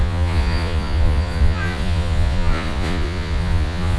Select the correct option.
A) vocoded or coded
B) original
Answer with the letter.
A